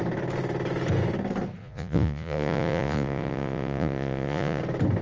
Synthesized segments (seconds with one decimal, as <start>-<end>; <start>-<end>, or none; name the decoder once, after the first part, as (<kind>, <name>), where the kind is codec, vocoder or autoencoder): 1.6-4.6 (vocoder, Vocos)